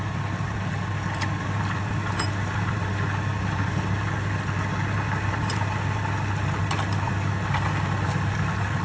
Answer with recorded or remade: recorded